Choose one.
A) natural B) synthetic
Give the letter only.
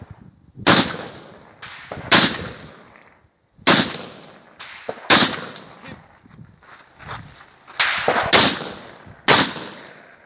A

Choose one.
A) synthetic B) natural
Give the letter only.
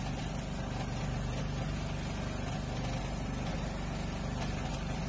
B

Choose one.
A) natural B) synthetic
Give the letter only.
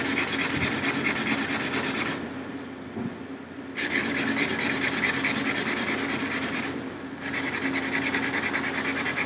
A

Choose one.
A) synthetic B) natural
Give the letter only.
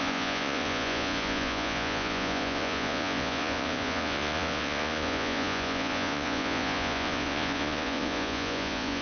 A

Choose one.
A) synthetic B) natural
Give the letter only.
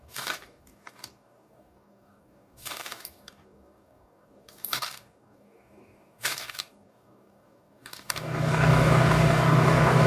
A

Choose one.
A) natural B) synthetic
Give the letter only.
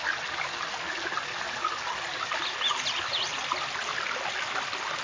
A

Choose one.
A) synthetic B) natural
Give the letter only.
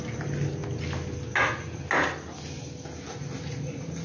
B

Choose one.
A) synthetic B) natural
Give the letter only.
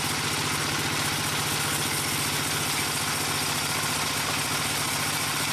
B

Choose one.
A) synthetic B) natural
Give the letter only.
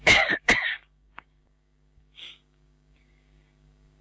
A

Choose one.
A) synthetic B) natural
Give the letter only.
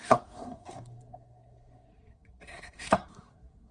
A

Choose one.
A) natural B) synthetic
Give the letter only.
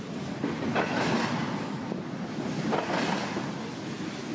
A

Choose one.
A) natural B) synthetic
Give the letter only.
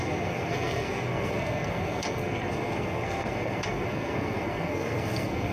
B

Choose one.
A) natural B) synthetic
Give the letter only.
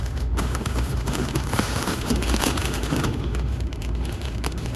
B